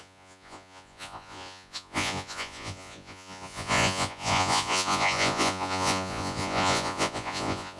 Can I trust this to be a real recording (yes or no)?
no